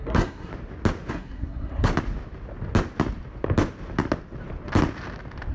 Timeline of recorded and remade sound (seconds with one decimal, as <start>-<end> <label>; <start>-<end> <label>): 0.0-0.5 remade; 0.5-1.1 recorded; 1.1-1.9 remade; 1.9-5.5 recorded